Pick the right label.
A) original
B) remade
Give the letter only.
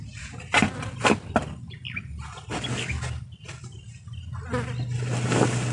A